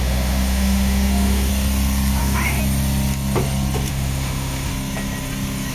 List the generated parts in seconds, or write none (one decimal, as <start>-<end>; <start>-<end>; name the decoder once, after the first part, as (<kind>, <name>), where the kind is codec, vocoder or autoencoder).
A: 0.0-1.5 (autoencoder, DAC-VAE); 2.2-2.6; 3.9-4.7